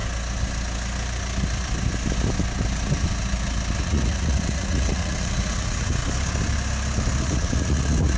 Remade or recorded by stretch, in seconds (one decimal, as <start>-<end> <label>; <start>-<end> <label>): 0.0-3.8 recorded; 3.8-6.0 remade; 6.0-7.2 recorded; 7.2-8.2 remade